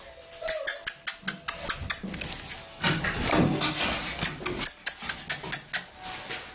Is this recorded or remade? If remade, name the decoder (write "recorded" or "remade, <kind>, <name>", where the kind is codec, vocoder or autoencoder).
recorded